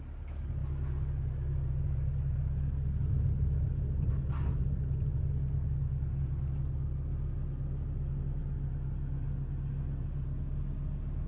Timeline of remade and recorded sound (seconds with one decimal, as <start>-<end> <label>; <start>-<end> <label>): 0.0-11.3 recorded